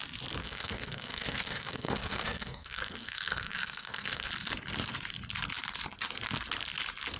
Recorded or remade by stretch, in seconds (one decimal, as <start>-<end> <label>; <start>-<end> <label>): 0.0-0.4 recorded; 0.4-4.3 remade; 4.3-7.2 recorded